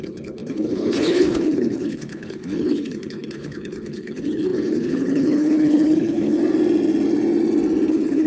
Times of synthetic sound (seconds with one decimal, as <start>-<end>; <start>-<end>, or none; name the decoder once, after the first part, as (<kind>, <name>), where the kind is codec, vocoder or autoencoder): 0.0-6.4 (codec, HILCodec); 7.9-8.3